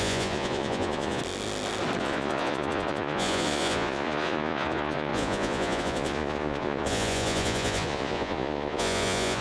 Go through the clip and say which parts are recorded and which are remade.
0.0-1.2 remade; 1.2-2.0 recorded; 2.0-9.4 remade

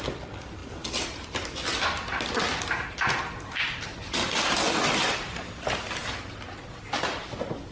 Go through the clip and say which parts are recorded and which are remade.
0.0-7.7 recorded

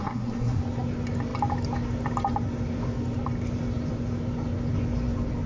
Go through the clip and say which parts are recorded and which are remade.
0.0-0.6 remade; 0.6-5.5 recorded

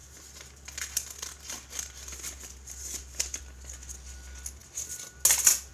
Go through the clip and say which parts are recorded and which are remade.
0.0-3.4 remade; 3.4-5.7 recorded

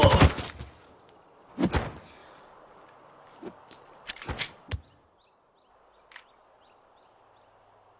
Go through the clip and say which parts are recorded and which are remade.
0.0-2.2 recorded; 2.2-4.1 remade; 4.1-8.0 recorded

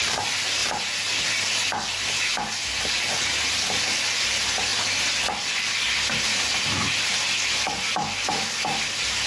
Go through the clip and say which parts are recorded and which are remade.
0.0-0.6 recorded; 0.6-2.8 remade; 2.8-9.3 recorded

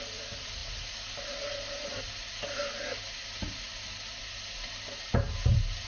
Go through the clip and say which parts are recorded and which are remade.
0.0-5.9 recorded